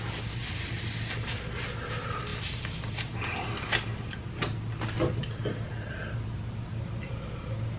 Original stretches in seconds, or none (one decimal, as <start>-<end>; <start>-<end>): 0.0-2.3; 3.6-7.8